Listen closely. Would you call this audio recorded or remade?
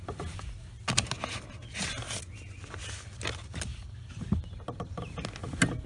recorded